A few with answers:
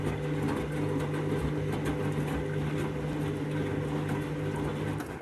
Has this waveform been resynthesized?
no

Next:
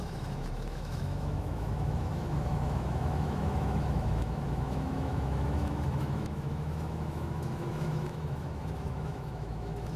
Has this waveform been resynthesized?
yes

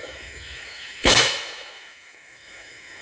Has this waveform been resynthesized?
yes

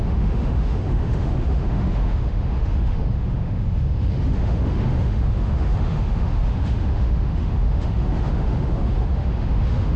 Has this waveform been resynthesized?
yes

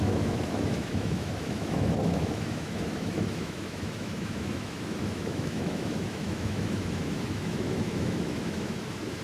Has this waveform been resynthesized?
yes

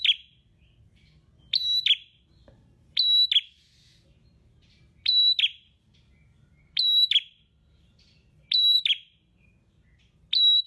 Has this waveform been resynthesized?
no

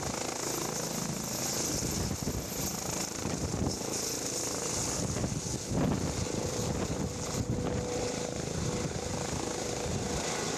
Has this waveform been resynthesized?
no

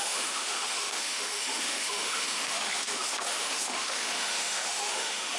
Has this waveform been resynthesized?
yes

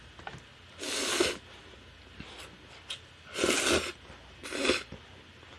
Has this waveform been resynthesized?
no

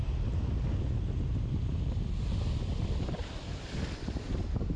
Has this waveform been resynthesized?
no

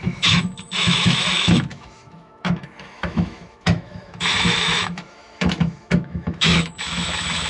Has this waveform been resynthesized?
yes